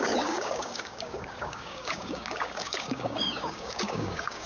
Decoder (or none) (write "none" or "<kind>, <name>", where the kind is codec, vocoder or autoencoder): codec, DAC